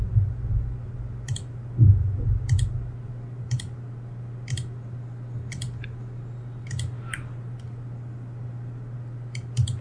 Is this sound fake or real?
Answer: real